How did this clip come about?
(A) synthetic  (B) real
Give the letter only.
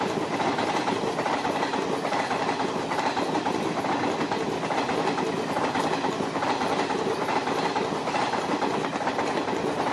B